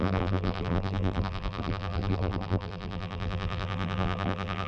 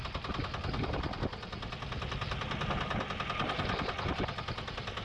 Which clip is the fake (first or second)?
first